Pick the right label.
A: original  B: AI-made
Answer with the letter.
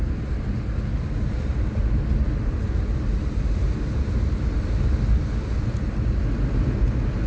A